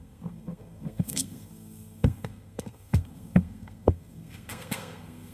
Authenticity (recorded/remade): remade